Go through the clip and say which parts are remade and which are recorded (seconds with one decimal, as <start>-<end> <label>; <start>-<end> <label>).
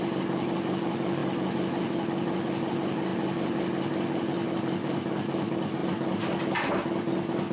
0.0-7.5 recorded